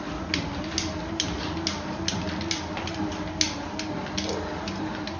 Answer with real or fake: real